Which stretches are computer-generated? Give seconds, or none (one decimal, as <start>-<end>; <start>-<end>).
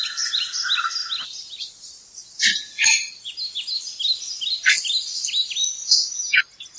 none